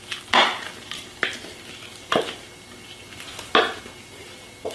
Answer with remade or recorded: recorded